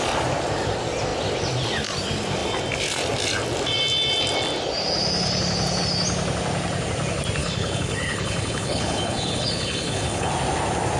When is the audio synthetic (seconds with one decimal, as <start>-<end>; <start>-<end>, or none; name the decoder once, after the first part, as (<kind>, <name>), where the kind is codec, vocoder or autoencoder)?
7.4-10.3 (codec, HILCodec)